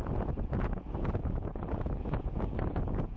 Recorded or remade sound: remade